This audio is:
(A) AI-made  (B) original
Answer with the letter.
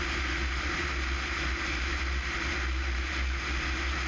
B